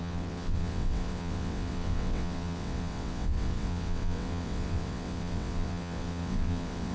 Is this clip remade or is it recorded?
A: remade